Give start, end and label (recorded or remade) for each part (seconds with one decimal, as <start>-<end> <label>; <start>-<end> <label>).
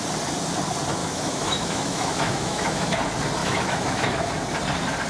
0.0-1.0 recorded; 1.0-3.0 remade; 3.0-3.4 recorded; 3.4-4.3 remade; 4.3-5.1 recorded